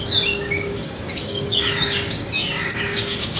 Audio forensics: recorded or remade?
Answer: remade